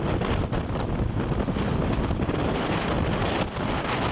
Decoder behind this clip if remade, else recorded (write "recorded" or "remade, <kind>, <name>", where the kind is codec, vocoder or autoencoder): recorded